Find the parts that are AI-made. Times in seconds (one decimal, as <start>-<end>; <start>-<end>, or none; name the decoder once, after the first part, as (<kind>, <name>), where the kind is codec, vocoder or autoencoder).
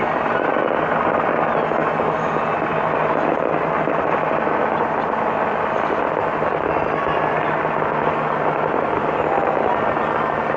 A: none